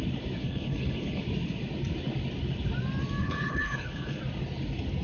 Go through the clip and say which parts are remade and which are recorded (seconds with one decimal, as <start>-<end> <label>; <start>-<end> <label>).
0.0-0.4 recorded; 0.4-1.2 remade; 1.2-3.2 recorded; 3.2-4.2 remade; 4.2-5.0 recorded